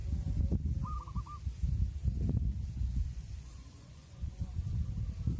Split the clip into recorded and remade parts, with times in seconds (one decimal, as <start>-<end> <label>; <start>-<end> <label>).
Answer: 0.0-2.9 recorded; 2.9-4.9 remade; 4.9-5.4 recorded